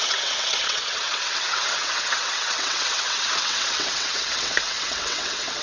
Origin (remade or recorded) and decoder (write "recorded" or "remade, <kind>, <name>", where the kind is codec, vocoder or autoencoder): remade, vocoder, WaveNeXt